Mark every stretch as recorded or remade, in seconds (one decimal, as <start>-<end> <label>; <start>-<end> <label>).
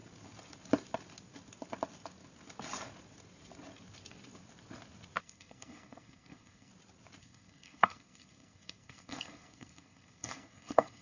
0.0-5.2 recorded; 5.2-6.7 remade; 6.7-7.2 recorded; 7.2-11.0 remade